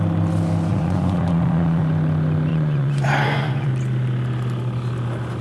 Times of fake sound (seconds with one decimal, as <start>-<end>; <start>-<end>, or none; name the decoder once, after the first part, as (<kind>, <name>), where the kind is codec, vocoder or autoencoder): 0.7-1.8 (vocoder, Vocos); 2.5-3.7